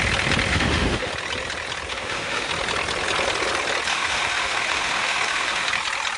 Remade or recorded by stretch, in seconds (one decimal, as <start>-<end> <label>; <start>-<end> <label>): 0.0-0.5 recorded; 0.5-1.1 remade; 1.1-1.9 recorded; 1.9-2.5 remade; 2.5-3.9 recorded; 3.9-5.7 remade; 5.7-6.2 recorded